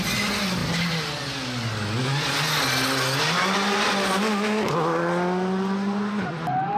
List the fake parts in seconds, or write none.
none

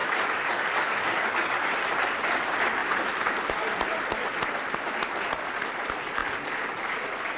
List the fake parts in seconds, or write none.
0.0-1.7 (codec, DAC)

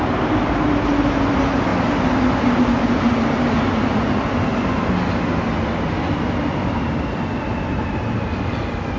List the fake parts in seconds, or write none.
none